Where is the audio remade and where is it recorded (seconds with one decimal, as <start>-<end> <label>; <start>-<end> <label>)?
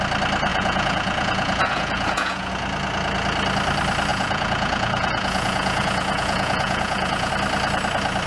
0.0-0.5 recorded; 0.5-2.5 remade; 2.5-4.1 recorded; 4.1-7.3 remade; 7.3-8.3 recorded